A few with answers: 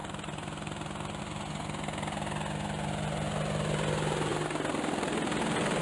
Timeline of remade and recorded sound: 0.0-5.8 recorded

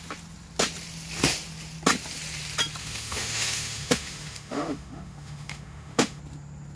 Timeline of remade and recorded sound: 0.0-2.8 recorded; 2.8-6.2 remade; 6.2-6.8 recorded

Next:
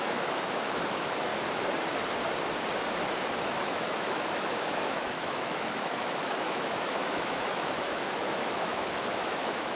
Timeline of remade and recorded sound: 0.0-1.3 remade; 1.3-3.3 recorded; 3.3-9.7 remade